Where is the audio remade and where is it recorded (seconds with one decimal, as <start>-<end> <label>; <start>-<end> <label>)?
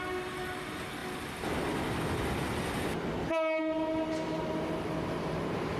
0.0-5.8 recorded